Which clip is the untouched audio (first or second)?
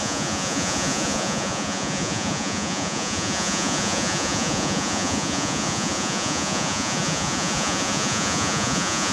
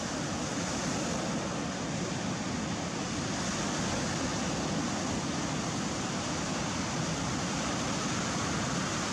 second